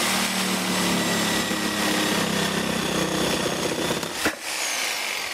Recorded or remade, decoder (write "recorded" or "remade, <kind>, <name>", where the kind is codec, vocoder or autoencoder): recorded